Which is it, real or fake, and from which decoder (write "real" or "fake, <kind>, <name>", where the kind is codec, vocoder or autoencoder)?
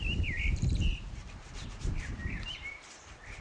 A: fake, vocoder, BigVGAN v2